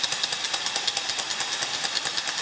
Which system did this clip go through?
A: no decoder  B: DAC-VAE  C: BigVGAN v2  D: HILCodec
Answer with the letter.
A